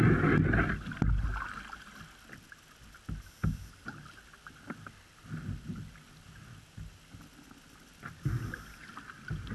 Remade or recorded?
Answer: recorded